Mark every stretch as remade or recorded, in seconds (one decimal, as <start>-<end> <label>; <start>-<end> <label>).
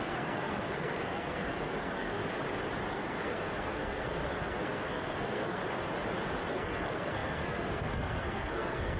0.0-2.2 remade; 2.2-2.9 recorded; 2.9-5.6 remade; 5.6-6.5 recorded; 6.5-9.0 remade